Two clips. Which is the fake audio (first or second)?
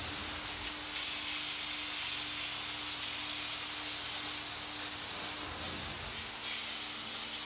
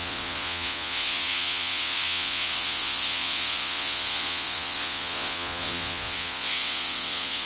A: second